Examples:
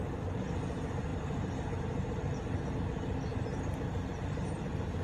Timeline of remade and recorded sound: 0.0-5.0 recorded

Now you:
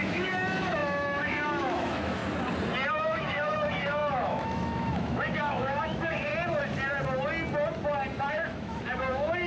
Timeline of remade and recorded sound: 0.0-2.2 remade; 2.2-2.9 recorded; 2.9-6.3 remade; 6.3-8.3 recorded; 8.3-9.5 remade

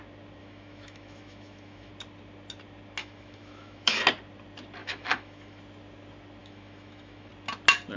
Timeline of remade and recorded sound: 0.0-0.4 recorded; 0.4-1.9 remade; 1.9-3.0 recorded; 3.0-4.0 remade; 4.0-4.8 recorded; 4.8-5.6 remade; 5.6-6.4 recorded; 6.4-7.3 remade; 7.3-8.0 recorded

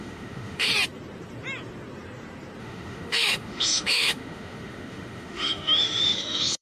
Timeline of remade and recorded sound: 0.0-0.7 remade; 0.7-2.6 recorded; 2.6-6.6 remade

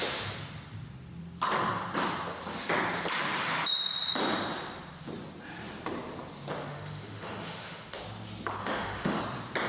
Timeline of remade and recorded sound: 0.0-6.7 recorded; 6.7-8.0 remade; 8.0-8.6 recorded; 8.6-9.2 remade; 9.2-9.7 recorded